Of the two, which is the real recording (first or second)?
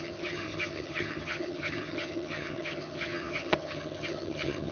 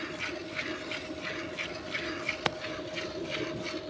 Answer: second